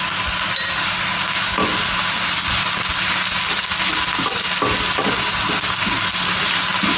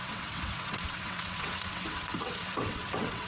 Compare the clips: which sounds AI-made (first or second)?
second